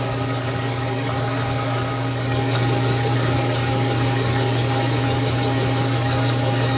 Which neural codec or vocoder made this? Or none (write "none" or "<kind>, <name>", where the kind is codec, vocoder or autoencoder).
codec, DAC